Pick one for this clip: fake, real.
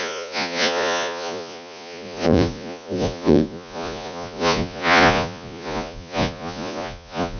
fake